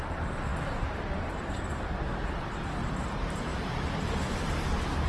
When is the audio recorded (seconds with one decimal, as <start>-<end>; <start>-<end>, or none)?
0.0-2.8